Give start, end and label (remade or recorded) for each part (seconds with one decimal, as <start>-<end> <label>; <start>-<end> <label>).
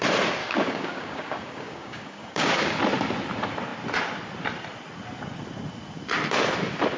0.0-0.4 recorded; 0.4-2.8 remade; 2.8-7.0 recorded